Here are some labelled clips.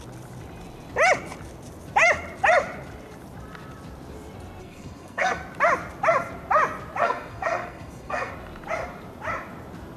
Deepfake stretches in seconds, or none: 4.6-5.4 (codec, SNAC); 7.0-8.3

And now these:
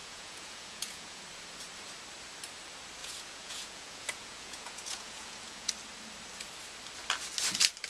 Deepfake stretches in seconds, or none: 0.0-1.2 (vocoder, Vocos); 3.0-5.7

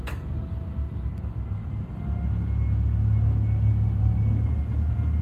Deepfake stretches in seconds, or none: none

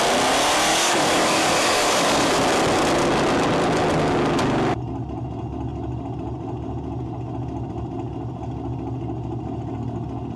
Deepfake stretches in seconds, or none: 0.7-2.3 (codec, DAC)

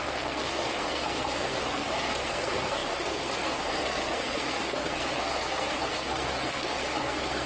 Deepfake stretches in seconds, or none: 0.0-7.5 (codec, SNAC)

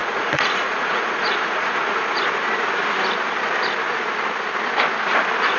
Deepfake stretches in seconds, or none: 0.0-2.2 (vocoder, Vocos)

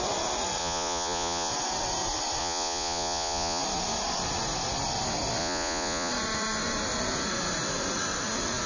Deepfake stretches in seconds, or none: 0.6-1.5 (vocoder, Vocos); 2.4-3.6; 5.4-6.1

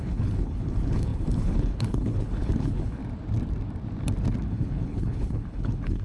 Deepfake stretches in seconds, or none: 0.0-3.0 (codec, HILCodec); 4.5-6.0